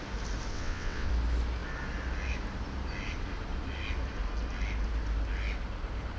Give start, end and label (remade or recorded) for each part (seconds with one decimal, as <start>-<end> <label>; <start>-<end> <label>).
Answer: 0.0-0.5 recorded; 0.5-1.1 remade; 1.1-6.2 recorded